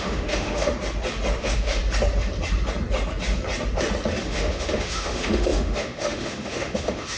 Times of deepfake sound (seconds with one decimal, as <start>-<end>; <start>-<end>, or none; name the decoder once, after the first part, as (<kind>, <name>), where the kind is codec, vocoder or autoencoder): 0.0-0.7 (autoencoder, DAC-VAE); 1.4-1.8; 4.2-7.2